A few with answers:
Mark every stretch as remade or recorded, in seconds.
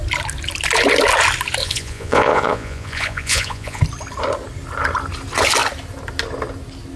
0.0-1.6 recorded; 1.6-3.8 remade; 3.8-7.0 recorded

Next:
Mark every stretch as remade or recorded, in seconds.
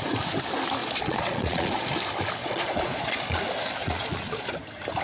0.0-0.8 recorded; 0.8-1.9 remade; 1.9-2.4 recorded; 2.4-3.4 remade; 3.4-3.8 recorded; 3.8-4.5 remade; 4.5-5.0 recorded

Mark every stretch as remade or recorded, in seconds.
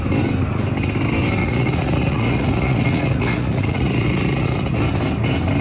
0.0-1.4 recorded; 1.4-4.8 remade; 4.8-5.6 recorded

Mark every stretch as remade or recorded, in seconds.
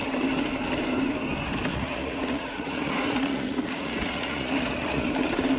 0.0-1.7 recorded; 1.7-5.1 remade; 5.1-5.6 recorded